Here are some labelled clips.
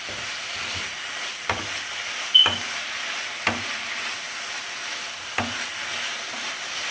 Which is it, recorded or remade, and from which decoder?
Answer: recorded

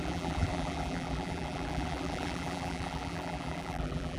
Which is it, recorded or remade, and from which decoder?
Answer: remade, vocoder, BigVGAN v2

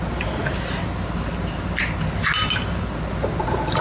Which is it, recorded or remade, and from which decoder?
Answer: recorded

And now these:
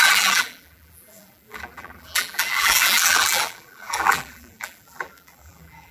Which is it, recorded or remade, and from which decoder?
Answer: remade, vocoder, BigVGAN v2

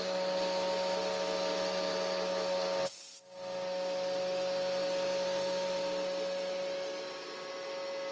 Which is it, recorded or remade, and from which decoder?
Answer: recorded